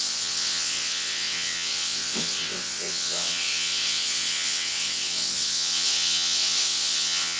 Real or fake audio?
fake